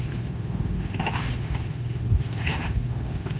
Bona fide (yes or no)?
no